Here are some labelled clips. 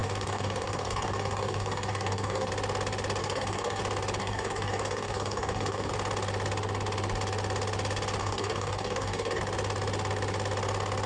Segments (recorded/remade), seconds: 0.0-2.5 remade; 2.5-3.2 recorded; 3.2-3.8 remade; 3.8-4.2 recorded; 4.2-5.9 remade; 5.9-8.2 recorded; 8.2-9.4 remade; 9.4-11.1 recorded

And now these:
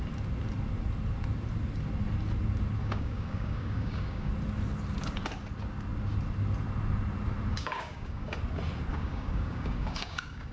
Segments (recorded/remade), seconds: 0.0-2.8 recorded; 2.8-4.3 remade; 4.3-7.5 recorded; 7.5-8.4 remade; 8.4-8.9 recorded; 8.9-10.5 remade

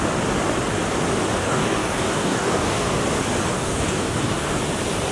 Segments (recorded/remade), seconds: 0.0-1.4 recorded; 1.4-3.0 remade; 3.0-3.5 recorded; 3.5-4.6 remade; 4.6-5.1 recorded

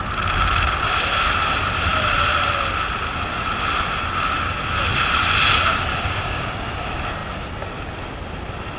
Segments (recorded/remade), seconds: 0.0-5.9 recorded; 5.9-6.5 remade; 6.5-8.8 recorded

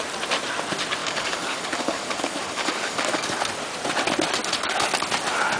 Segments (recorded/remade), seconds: 0.0-1.0 recorded; 1.0-3.3 remade; 3.3-5.6 recorded

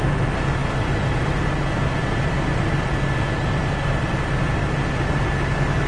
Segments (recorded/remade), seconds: 0.0-5.9 recorded

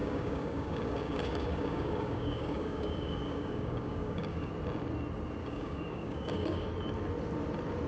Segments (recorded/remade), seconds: 0.0-4.5 remade; 4.5-5.4 recorded; 5.4-6.7 remade; 6.7-7.9 recorded

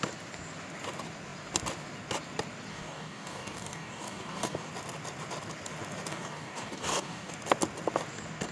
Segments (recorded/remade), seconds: 0.0-2.7 recorded; 2.7-4.7 remade; 4.7-6.1 recorded; 6.1-7.3 remade; 7.3-8.5 recorded